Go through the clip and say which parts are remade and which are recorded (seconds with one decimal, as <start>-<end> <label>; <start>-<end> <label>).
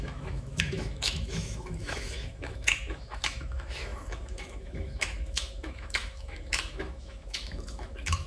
0.0-8.3 remade